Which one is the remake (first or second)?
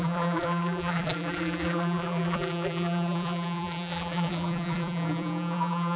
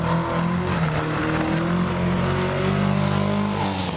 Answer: first